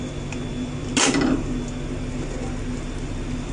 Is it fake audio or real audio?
real